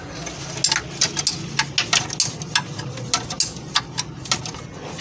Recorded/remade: recorded